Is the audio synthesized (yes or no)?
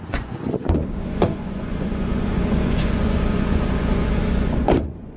yes